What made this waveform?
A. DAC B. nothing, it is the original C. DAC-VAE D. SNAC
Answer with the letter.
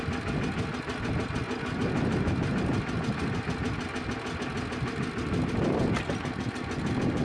B